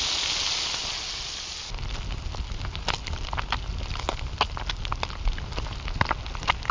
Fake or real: real